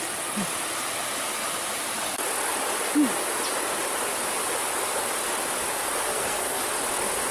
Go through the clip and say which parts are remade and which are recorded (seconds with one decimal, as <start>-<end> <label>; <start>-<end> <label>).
0.0-6.1 recorded; 6.1-6.6 remade; 6.6-7.3 recorded